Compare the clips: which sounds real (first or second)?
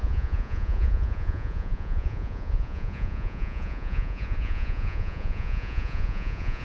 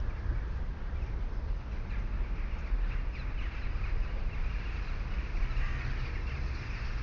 second